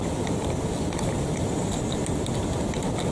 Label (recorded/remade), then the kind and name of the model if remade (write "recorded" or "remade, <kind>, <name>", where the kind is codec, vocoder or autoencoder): recorded